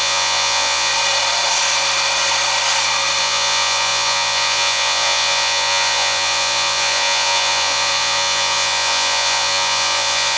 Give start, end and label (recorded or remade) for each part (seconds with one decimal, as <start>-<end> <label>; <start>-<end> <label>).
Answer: 0.0-0.9 remade; 0.9-3.2 recorded; 3.2-10.4 remade